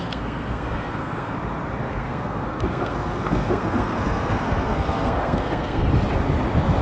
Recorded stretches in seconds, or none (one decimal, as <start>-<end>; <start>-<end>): 1.3-1.9; 5.9-6.8